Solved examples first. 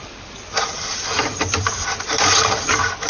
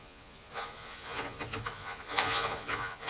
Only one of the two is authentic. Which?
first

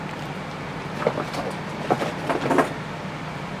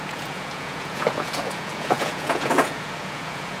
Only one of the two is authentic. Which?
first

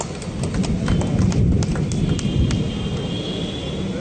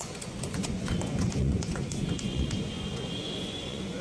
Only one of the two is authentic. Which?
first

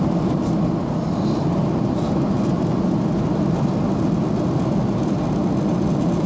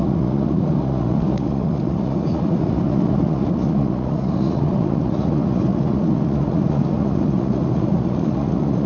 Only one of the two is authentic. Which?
first